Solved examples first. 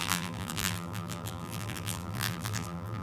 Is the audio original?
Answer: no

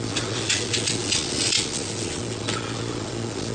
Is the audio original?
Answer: no